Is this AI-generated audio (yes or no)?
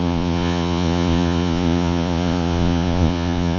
yes